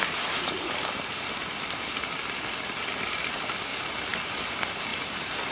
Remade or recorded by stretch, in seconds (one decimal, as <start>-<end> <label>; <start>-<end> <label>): 0.0-5.5 remade